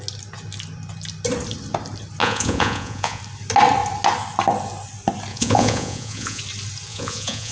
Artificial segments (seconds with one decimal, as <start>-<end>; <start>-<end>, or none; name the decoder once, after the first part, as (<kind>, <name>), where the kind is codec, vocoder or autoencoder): 2.2-3.2 (vocoder, Vocos); 5.3-6.4; 6.9-7.5